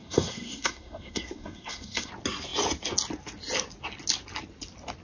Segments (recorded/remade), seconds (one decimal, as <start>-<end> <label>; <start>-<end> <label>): 0.0-2.1 remade; 2.1-5.0 recorded